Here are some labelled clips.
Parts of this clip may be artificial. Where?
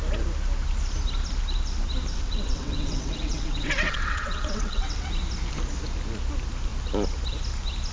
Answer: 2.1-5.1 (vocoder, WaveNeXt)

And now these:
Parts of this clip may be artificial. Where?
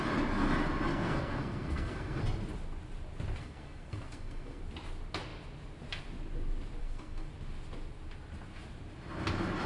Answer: 0.9-2.2 (codec, SNAC); 3.4-4.6; 6.8-7.3